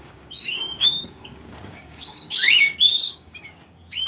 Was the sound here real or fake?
fake